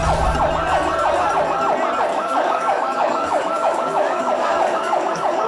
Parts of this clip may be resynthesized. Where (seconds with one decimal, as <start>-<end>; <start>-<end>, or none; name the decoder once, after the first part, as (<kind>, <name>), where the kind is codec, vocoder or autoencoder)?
2.1-5.5 (codec, DAC)